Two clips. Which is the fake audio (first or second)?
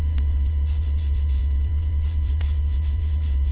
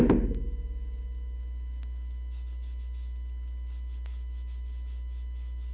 first